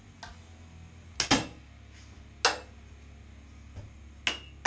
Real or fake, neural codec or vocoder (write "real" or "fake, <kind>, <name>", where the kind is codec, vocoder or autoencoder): real